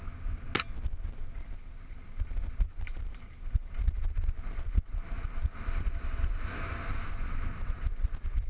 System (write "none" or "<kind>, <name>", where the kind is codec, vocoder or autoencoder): none